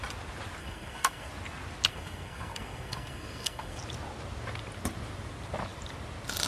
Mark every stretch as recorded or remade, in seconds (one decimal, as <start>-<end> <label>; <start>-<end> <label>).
0.0-0.6 recorded; 0.6-1.3 remade; 1.3-1.9 recorded; 1.9-3.8 remade; 3.8-6.5 recorded